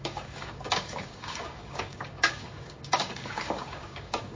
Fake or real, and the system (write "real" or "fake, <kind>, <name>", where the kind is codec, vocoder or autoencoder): fake, codec, DAC